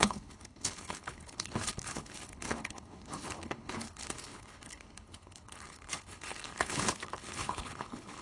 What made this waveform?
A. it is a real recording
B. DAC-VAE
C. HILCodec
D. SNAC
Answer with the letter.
C